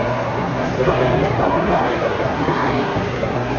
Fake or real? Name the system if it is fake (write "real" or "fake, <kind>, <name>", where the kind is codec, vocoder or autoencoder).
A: fake, codec, SNAC